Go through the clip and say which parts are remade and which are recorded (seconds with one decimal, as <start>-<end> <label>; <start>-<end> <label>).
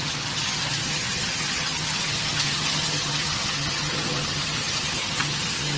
0.0-5.8 remade